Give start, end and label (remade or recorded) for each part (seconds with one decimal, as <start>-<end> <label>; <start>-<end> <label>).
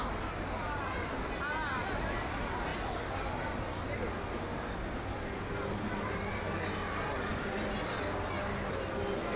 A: 0.0-9.4 recorded